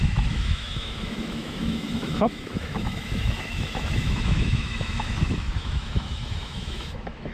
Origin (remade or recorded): remade